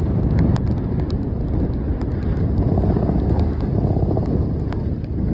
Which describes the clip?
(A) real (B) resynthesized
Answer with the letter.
A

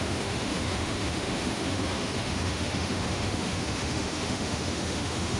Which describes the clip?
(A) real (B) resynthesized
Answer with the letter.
B